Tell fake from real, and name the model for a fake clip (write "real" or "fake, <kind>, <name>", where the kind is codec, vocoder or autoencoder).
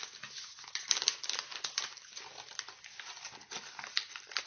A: real